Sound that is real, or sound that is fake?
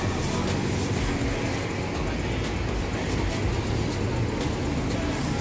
real